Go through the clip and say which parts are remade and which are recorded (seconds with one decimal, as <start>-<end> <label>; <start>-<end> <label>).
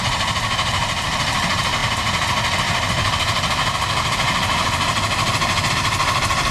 0.0-6.5 recorded